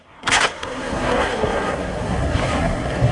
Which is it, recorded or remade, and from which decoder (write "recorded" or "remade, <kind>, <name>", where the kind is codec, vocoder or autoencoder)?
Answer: remade, codec, SNAC